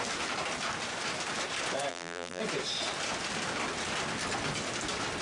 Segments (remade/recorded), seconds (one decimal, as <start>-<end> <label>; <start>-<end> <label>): 0.0-1.9 recorded; 1.9-2.4 remade; 2.4-5.2 recorded